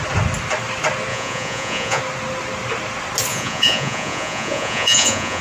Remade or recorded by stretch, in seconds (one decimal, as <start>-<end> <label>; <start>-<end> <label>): 0.0-1.1 recorded; 1.1-2.0 remade; 2.0-3.3 recorded; 3.3-5.4 remade